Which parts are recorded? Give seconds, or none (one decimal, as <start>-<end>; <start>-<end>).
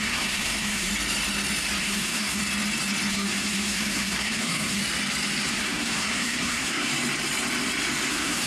0.9-1.8; 2.4-3.1; 4.8-5.5; 6.9-8.1